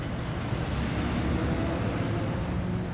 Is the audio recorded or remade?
recorded